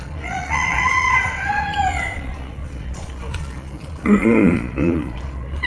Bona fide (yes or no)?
no